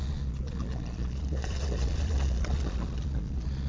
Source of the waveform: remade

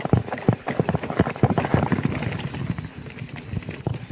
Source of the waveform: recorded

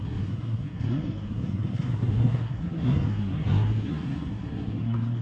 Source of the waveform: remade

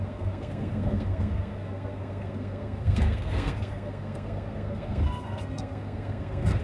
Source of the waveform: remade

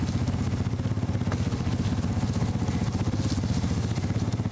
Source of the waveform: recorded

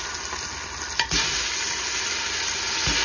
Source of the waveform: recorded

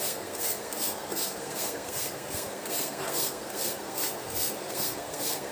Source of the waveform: remade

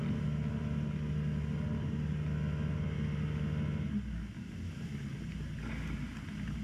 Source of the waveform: recorded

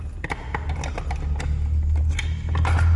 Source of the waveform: recorded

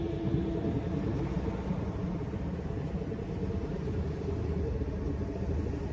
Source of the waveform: recorded